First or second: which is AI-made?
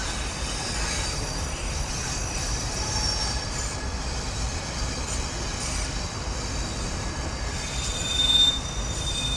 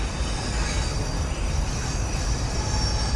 first